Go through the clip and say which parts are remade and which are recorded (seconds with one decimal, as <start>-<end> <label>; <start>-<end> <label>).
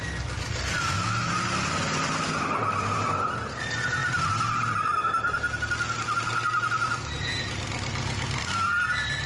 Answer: 0.0-9.3 recorded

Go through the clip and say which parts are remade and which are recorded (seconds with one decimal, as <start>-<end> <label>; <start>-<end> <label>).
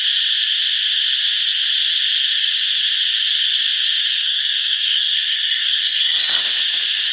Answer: 0.0-4.1 recorded; 4.1-6.4 remade; 6.4-7.1 recorded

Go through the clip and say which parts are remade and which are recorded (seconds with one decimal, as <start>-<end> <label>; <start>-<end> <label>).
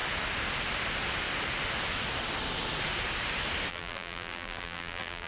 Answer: 0.0-3.7 recorded; 3.7-5.3 remade